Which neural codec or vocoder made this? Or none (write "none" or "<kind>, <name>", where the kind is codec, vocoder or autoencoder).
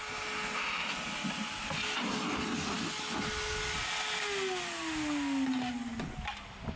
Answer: none